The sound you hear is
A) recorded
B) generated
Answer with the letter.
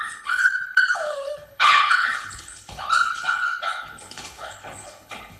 B